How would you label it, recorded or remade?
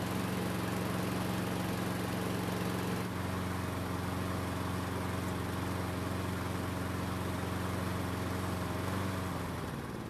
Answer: recorded